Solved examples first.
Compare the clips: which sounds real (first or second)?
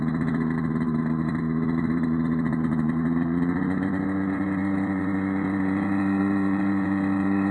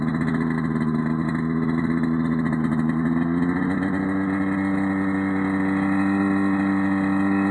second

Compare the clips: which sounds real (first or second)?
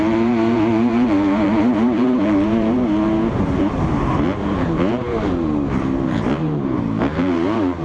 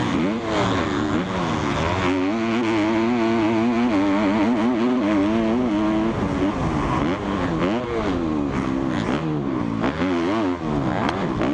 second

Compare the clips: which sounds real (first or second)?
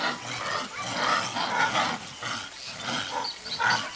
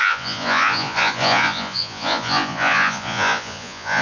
first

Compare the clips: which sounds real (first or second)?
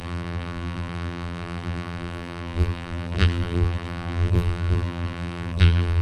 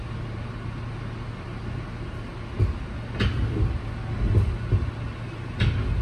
second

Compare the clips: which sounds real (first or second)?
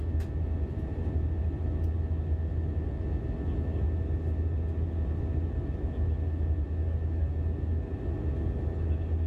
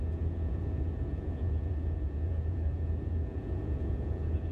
first